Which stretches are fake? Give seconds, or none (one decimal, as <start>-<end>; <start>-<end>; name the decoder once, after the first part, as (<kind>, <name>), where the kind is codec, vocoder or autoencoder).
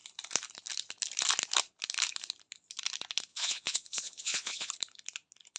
3.3-4.7 (vocoder, Vocos)